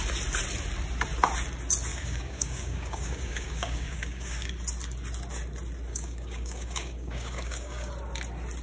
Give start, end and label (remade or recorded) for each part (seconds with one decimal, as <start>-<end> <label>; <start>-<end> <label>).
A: 0.0-1.9 recorded; 1.9-4.5 remade; 4.5-5.9 recorded; 5.9-7.9 remade; 7.9-8.6 recorded

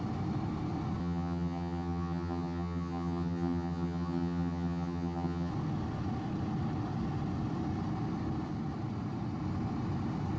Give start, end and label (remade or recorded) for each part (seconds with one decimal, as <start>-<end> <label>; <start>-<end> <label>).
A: 0.0-1.0 recorded; 1.0-5.5 remade; 5.5-10.4 recorded

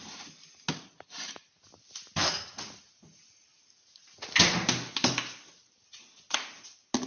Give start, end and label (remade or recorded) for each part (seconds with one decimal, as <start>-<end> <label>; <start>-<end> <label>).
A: 0.0-7.1 recorded

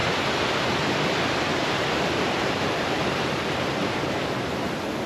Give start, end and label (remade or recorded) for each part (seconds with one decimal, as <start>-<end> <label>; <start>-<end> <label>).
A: 0.0-1.5 recorded; 1.5-4.5 remade; 4.5-5.1 recorded

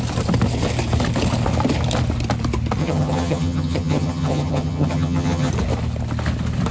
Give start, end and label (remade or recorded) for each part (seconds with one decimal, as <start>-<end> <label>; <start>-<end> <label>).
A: 0.0-2.8 recorded; 2.8-5.5 remade; 5.5-6.7 recorded